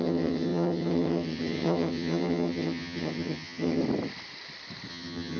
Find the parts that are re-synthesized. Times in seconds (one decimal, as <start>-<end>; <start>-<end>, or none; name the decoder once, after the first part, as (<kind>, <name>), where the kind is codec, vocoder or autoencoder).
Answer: 0.0-3.8 (vocoder, HiFi-GAN); 4.9-5.4